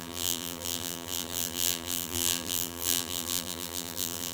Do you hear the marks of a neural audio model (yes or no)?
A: yes